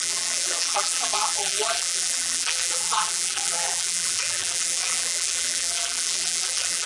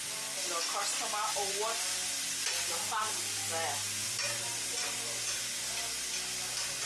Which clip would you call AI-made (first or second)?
first